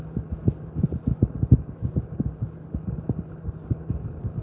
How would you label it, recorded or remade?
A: recorded